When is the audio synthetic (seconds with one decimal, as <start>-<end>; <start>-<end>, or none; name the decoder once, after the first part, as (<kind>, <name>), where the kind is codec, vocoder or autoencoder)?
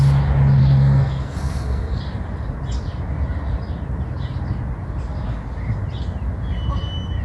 0.6-2.0 (codec, SNAC)